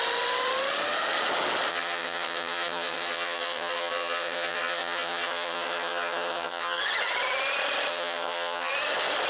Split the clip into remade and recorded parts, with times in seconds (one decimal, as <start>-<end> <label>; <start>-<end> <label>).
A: 0.0-1.7 recorded; 1.7-6.8 remade; 6.8-7.9 recorded; 7.9-8.7 remade; 8.7-9.3 recorded